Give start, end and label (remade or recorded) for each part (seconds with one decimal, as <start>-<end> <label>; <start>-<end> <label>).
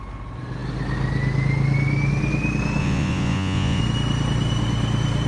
0.0-2.8 recorded; 2.8-3.8 remade; 3.8-5.3 recorded